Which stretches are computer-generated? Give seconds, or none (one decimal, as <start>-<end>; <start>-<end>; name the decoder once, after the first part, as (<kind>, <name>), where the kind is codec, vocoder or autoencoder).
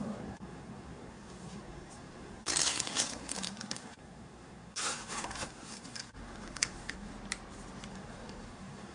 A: 0.0-7.1 (codec, SNAC); 7.9-8.9